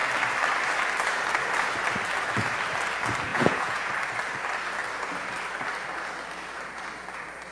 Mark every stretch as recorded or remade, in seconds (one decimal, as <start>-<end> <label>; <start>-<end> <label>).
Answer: 0.0-3.3 recorded; 3.3-3.9 remade; 3.9-7.5 recorded